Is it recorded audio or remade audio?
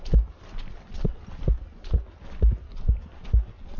recorded